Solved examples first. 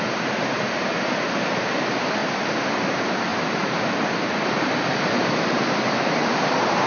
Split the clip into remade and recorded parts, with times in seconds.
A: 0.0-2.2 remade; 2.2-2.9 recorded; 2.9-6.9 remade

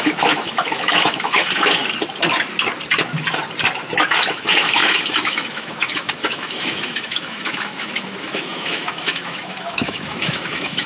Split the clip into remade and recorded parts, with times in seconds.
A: 0.0-1.8 remade; 1.8-4.1 recorded; 4.1-10.9 remade

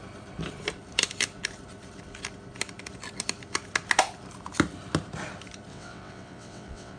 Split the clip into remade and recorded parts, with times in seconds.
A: 0.0-5.7 recorded; 5.7-7.0 remade

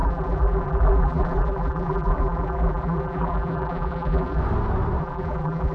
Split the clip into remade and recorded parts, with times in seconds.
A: 0.0-4.4 remade; 4.4-5.0 recorded; 5.0-5.7 remade

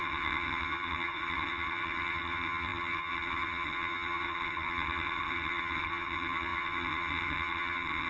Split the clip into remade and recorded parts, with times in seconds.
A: 0.0-8.1 remade

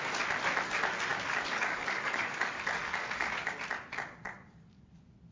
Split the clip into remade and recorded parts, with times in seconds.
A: 0.0-1.1 recorded; 1.1-3.6 remade; 3.6-5.3 recorded